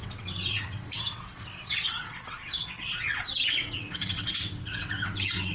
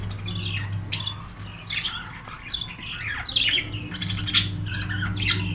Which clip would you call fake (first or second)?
first